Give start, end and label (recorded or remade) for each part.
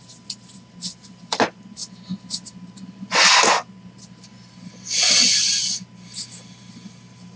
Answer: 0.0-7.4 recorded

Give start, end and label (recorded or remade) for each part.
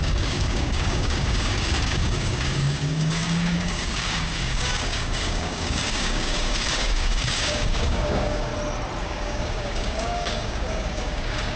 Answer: 0.0-8.5 remade; 8.5-9.0 recorded; 9.0-11.6 remade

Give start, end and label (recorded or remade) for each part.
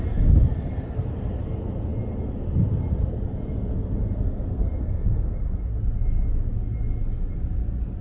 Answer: 0.0-4.5 recorded; 4.5-5.7 remade; 5.7-8.0 recorded